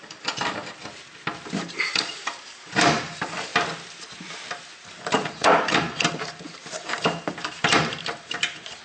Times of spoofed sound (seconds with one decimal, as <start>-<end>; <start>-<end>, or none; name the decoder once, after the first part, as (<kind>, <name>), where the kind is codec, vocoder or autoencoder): 0.0-0.8 (vocoder, BigVGAN v2); 1.6-3.5; 4.9-8.8